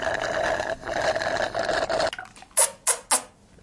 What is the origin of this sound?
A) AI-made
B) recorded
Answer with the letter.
B